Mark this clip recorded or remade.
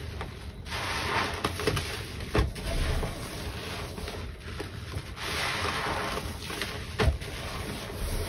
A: recorded